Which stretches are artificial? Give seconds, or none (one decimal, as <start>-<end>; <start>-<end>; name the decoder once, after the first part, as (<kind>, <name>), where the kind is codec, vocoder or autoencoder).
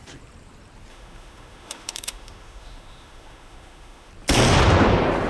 0.9-4.1 (autoencoder, DAC-VAE)